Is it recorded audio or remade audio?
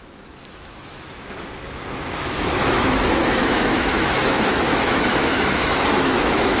remade